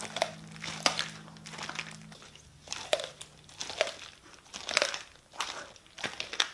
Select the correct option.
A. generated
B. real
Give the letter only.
B